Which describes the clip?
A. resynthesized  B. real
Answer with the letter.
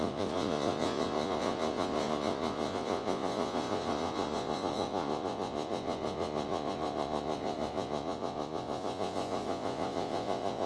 A